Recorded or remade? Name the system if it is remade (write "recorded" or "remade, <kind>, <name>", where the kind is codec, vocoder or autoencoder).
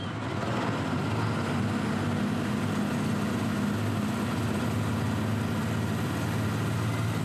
recorded